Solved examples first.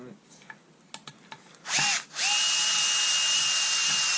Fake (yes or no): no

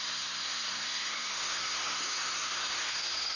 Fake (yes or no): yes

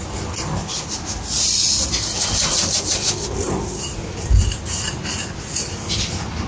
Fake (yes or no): no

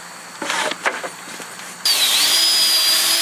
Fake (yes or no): no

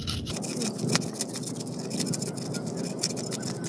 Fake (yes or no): no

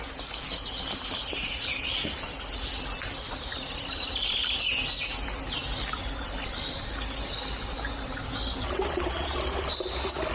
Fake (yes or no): no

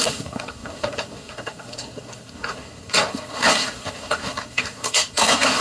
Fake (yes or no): yes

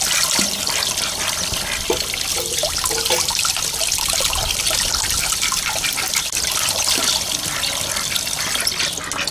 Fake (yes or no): no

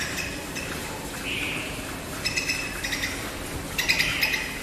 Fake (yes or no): no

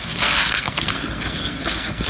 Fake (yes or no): yes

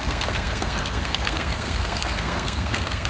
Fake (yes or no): yes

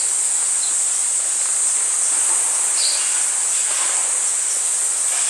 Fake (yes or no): no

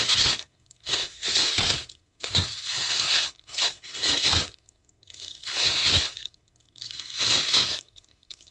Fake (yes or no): yes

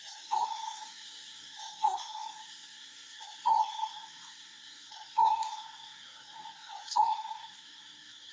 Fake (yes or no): yes